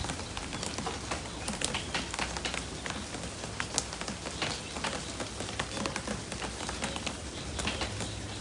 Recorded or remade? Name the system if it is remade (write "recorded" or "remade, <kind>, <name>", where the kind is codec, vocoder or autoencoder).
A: recorded